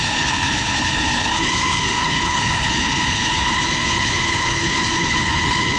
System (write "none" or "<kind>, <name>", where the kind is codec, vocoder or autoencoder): codec, HILCodec